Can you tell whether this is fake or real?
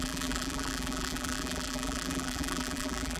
fake